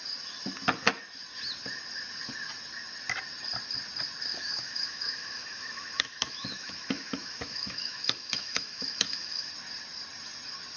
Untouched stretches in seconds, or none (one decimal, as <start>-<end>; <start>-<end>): 0.0-4.3; 9.5-10.8